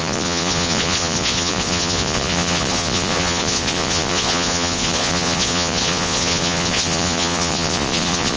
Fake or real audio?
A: fake